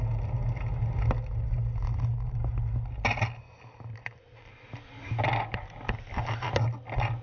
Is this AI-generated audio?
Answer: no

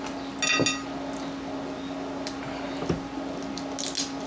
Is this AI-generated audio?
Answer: no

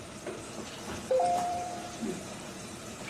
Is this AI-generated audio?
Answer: yes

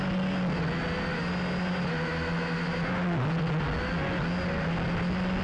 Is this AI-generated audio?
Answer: no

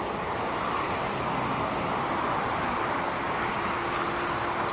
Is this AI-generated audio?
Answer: no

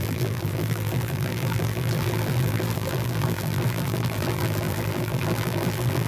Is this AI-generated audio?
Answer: yes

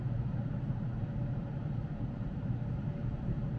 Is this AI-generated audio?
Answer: yes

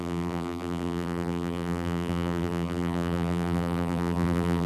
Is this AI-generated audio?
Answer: yes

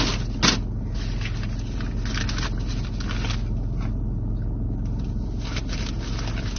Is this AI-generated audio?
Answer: no